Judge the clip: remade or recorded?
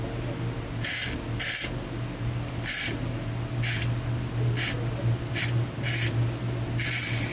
recorded